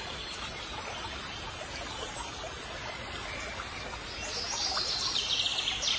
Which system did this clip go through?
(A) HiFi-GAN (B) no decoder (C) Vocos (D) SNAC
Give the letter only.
B